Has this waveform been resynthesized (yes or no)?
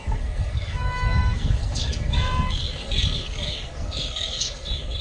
yes